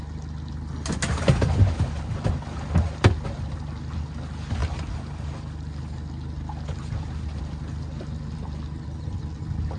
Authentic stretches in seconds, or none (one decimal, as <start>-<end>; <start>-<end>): 0.0-9.8